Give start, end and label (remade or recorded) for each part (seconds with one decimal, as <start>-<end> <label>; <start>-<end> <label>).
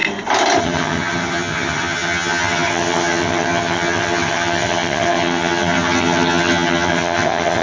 0.0-0.6 recorded; 0.6-7.6 remade